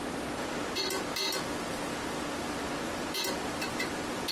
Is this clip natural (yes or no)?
yes